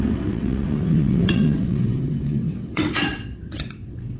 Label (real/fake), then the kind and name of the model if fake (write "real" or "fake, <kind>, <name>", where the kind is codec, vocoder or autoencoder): fake, vocoder, WaveNeXt